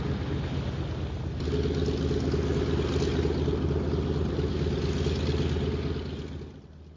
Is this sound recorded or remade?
recorded